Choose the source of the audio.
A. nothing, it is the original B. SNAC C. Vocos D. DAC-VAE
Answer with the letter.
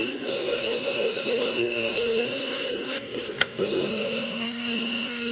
B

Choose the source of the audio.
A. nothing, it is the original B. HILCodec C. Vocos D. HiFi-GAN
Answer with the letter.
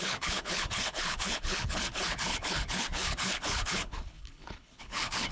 B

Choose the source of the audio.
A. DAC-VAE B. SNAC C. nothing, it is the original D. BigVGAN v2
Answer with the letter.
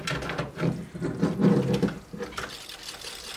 C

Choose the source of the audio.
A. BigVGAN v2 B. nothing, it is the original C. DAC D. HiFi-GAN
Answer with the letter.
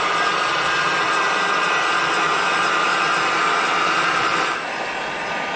B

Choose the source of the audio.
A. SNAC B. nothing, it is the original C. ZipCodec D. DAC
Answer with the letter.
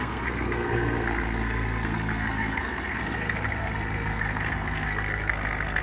A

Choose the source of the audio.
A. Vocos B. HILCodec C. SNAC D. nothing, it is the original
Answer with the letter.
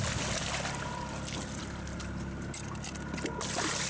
D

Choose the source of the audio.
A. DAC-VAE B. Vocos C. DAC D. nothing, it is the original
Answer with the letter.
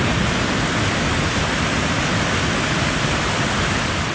D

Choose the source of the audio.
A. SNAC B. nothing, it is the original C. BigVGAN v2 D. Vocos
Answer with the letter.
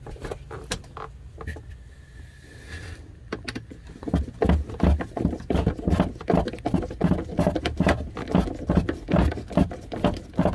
B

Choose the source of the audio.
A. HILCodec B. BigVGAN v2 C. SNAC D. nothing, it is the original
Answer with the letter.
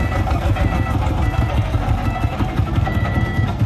C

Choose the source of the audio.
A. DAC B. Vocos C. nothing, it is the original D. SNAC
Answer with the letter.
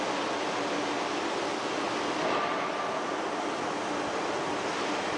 C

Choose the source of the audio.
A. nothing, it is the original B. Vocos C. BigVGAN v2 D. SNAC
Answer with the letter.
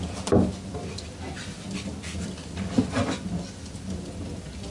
A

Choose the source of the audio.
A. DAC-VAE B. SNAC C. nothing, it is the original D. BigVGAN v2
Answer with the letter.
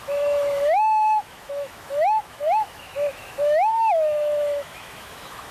A